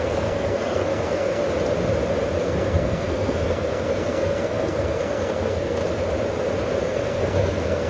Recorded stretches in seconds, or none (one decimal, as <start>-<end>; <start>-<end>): 1.4-2.4; 5.8-6.8